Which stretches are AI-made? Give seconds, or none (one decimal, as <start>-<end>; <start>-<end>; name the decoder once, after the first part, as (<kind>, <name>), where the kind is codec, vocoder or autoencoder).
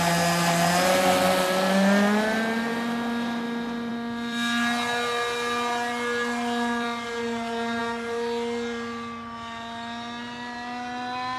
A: none